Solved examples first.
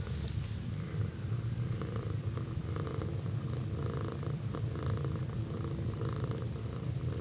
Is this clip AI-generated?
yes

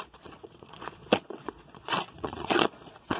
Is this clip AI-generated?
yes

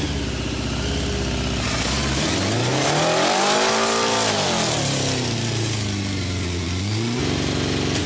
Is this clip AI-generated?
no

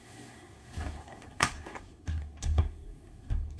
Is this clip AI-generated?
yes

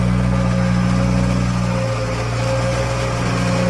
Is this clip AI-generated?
no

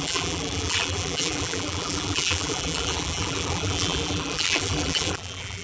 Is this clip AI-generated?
yes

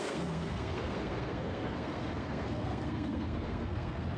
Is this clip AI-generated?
yes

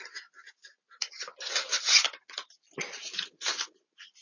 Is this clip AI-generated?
no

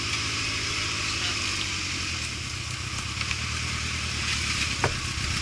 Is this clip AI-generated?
no